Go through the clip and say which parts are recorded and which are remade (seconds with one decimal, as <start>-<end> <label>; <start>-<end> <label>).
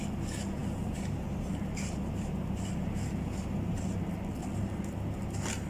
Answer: 0.0-5.7 recorded